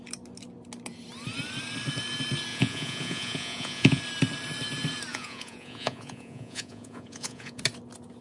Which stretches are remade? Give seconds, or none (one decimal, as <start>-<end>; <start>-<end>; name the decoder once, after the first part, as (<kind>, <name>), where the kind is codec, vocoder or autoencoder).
2.5-4.0 (vocoder, Vocos); 5.1-7.6